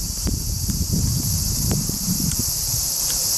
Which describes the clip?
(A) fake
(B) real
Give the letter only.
A